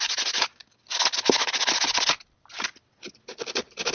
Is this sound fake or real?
real